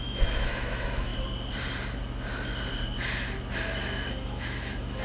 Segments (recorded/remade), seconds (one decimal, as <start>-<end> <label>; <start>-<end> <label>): 0.0-1.1 remade; 1.1-4.1 recorded; 4.1-5.0 remade